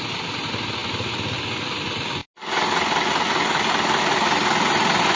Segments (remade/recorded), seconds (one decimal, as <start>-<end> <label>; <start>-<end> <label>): 0.0-5.2 recorded